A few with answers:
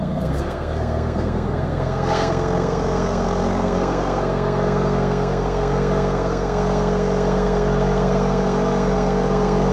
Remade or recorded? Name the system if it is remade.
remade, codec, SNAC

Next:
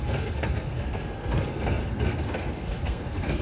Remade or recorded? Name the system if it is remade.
remade, codec, SNAC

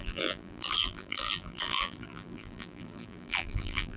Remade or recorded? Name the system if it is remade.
remade, vocoder, BigVGAN v2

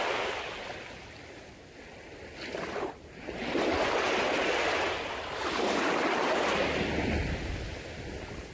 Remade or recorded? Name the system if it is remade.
recorded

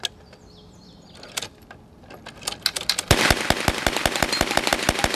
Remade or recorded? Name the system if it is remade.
recorded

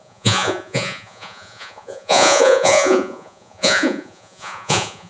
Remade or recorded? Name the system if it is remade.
remade, vocoder, Vocos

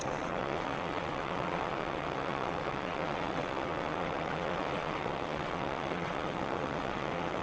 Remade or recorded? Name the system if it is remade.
remade, vocoder, WaveNeXt